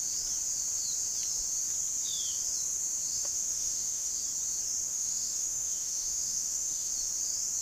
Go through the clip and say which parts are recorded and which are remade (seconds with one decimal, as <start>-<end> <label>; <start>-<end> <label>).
0.0-3.1 recorded; 3.1-4.1 remade; 4.1-4.9 recorded; 4.9-6.9 remade; 6.9-7.6 recorded